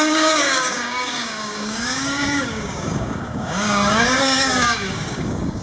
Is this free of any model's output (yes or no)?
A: no